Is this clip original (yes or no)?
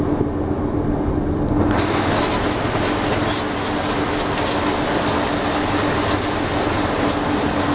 yes